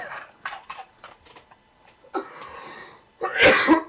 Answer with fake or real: real